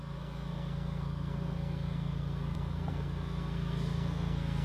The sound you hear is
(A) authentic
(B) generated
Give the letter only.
B